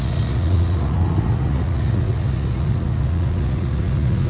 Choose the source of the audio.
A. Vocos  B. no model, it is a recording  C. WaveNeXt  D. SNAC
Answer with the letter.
A